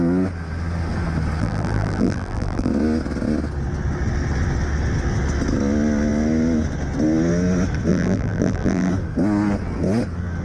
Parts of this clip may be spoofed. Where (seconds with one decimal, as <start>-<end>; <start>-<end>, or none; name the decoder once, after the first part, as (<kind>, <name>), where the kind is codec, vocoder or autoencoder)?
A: 1.4-2.7 (vocoder, BigVGAN v2); 7.9-8.9

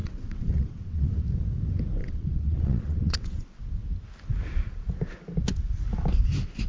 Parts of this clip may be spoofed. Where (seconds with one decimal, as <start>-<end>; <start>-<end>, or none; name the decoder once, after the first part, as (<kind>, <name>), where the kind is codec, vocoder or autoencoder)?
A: 0.0-1.2 (vocoder, WaveNeXt); 2.0-3.6

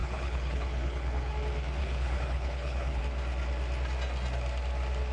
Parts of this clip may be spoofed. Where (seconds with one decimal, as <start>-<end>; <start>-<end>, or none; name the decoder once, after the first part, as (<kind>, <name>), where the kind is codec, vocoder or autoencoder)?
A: 0.0-1.3 (codec, HILCodec); 1.8-3.0

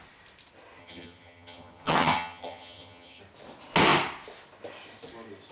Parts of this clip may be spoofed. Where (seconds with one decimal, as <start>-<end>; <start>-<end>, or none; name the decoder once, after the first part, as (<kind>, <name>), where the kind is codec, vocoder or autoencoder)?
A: 0.8-3.2 (vocoder, HiFi-GAN)

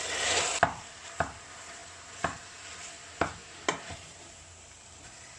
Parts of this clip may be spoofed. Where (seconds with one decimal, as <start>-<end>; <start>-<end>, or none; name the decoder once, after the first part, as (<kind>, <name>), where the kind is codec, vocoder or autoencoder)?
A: 1.8-3.3 (vocoder, BigVGAN v2)

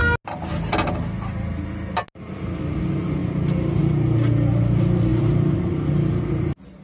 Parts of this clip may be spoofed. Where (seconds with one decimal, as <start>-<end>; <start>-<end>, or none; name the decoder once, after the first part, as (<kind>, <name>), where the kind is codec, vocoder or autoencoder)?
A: none

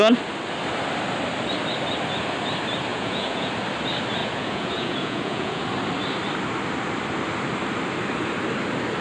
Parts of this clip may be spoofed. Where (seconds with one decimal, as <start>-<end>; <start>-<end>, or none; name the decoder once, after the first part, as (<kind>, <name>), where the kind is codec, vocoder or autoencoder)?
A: 2.9-3.5 (vocoder, Vocos); 4.2-5.6